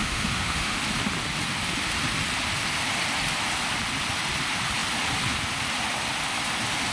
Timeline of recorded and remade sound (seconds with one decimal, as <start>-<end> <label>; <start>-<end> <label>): 0.0-0.8 remade; 0.8-6.9 recorded